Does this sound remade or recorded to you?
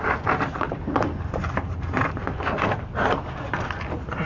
recorded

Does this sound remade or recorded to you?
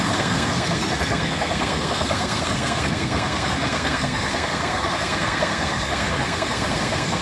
remade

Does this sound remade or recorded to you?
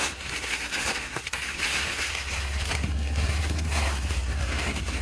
remade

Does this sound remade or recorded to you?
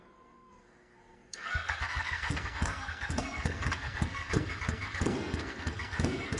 remade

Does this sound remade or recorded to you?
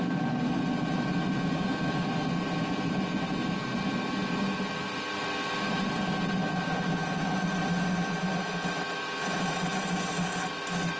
recorded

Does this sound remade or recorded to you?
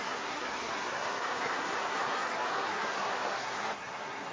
remade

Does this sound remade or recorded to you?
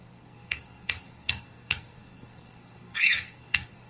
remade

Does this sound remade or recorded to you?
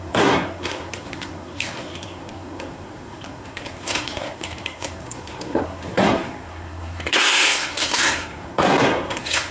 remade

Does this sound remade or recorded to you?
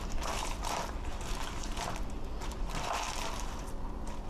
recorded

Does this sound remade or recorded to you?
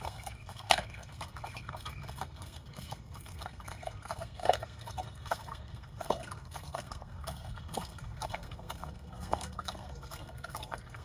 remade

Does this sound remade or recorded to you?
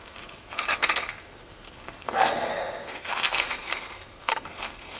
remade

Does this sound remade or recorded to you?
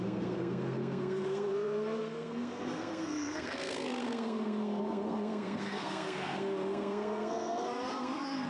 remade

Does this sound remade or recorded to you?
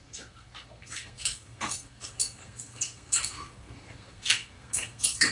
remade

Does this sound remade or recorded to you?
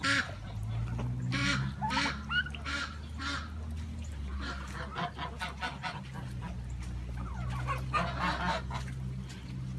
recorded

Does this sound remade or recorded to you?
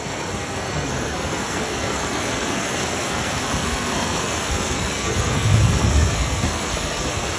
remade